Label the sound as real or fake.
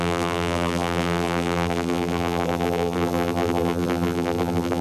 fake